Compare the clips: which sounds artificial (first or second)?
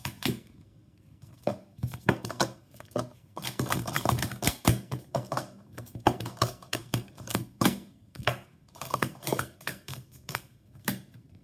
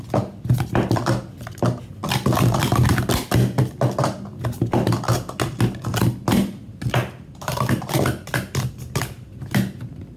first